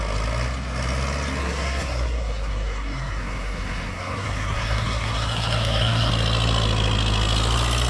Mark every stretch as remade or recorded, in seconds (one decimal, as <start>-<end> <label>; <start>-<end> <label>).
0.0-1.4 recorded; 1.4-6.1 remade; 6.1-7.9 recorded